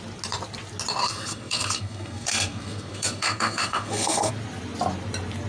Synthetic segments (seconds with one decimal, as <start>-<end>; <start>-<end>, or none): 1.0-4.3